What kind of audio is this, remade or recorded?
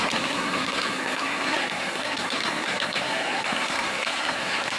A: remade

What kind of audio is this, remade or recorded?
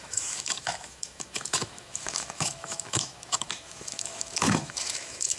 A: remade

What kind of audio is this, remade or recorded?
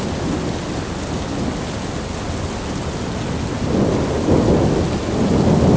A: recorded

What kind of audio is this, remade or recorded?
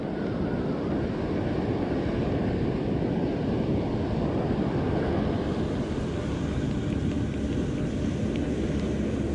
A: recorded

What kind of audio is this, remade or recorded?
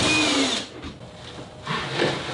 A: recorded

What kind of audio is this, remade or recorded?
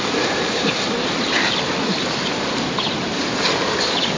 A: recorded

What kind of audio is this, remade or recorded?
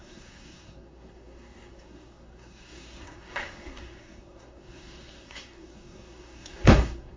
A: remade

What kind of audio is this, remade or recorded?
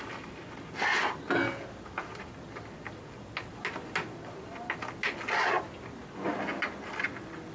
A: recorded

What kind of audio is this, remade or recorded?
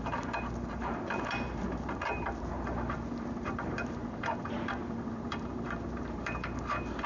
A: remade